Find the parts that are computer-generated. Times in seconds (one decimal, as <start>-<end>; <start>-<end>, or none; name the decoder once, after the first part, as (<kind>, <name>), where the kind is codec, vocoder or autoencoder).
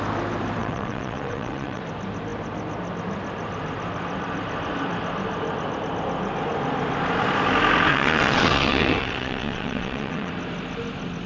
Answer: 0.6-1.8 (vocoder, WaveNeXt); 7.9-10.3